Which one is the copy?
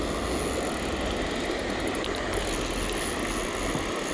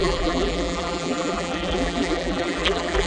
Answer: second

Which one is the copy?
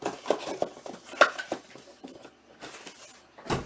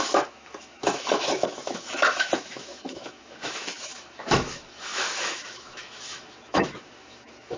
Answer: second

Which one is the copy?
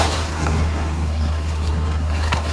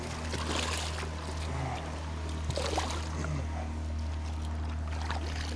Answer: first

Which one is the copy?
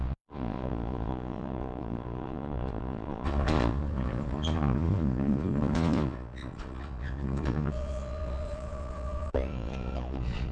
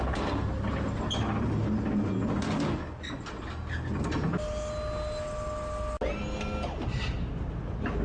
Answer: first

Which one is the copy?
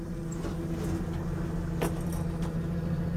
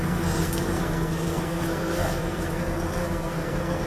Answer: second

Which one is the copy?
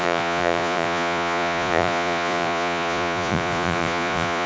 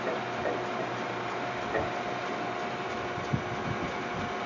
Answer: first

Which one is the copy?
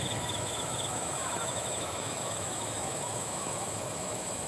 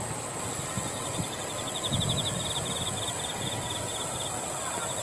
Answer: first